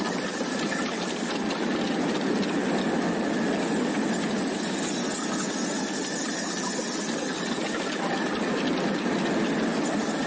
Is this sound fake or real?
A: real